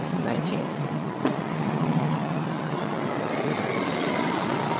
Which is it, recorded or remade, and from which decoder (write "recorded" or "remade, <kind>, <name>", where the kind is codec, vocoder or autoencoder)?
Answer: remade, vocoder, Vocos